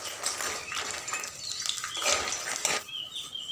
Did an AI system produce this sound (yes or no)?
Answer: no